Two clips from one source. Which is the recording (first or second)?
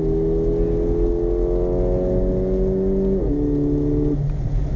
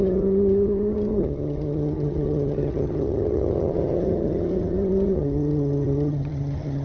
first